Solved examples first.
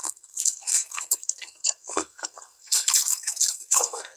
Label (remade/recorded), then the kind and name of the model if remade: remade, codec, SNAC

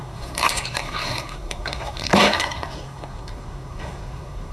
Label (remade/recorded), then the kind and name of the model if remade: remade, codec, SNAC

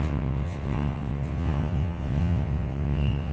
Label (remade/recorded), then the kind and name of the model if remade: remade, vocoder, WaveNeXt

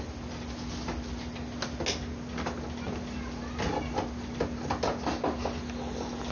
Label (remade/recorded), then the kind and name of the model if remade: recorded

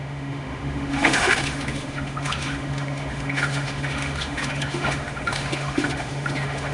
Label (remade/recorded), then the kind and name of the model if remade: remade, autoencoder, DAC-VAE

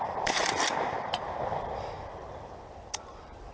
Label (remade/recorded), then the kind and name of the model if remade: remade, vocoder, BigVGAN v2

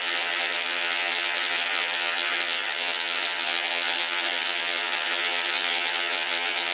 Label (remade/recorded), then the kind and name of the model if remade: remade, vocoder, HiFi-GAN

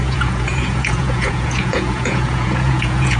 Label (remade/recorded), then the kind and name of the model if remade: remade, vocoder, Vocos